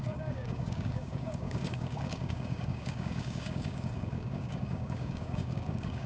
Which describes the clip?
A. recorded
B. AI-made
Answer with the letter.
B